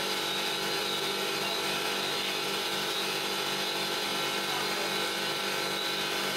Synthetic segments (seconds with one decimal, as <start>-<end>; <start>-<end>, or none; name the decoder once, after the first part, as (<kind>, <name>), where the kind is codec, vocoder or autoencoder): none